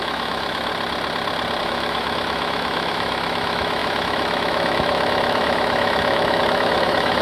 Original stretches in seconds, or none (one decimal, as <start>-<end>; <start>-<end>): 0.7-1.6